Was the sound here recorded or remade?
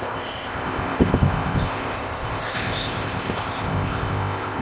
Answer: remade